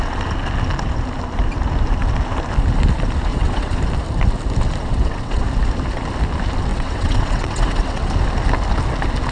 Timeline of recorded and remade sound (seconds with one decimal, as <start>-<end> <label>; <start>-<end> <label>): 0.0-3.3 recorded; 3.3-3.8 remade; 3.8-4.8 recorded; 4.8-5.4 remade; 5.4-6.7 recorded; 6.7-8.1 remade; 8.1-9.3 recorded